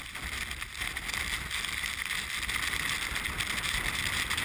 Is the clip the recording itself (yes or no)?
yes